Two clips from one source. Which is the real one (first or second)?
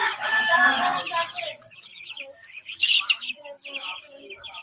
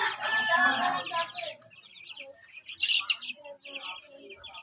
second